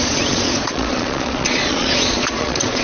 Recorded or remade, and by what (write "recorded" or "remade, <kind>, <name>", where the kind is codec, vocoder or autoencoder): remade, vocoder, Vocos